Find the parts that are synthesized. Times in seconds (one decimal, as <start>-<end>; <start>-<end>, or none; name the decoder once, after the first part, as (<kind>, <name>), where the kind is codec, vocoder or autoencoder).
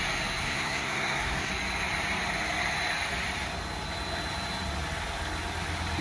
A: 0.4-1.5 (codec, SNAC)